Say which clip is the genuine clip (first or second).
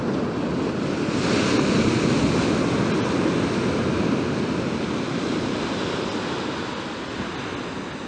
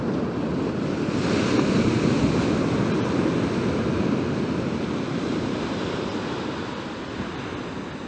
first